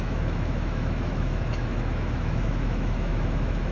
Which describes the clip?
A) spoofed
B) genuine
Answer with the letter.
A